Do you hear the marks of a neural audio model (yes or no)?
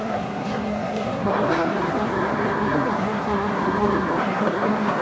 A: yes